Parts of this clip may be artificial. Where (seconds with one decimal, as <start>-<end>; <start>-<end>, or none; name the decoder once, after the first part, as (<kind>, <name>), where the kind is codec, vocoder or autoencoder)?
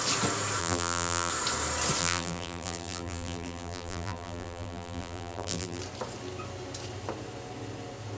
0.6-1.3 (vocoder, BigVGAN v2); 2.0-5.8